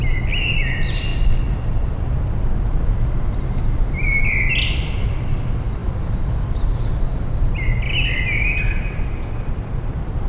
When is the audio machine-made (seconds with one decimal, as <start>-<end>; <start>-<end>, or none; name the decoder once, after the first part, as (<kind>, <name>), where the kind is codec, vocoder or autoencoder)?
none